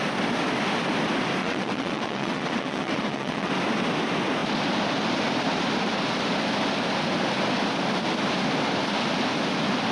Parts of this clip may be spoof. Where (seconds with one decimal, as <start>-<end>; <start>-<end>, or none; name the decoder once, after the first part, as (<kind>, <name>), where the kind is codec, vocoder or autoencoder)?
1.4-3.5 (vocoder, WaveNeXt)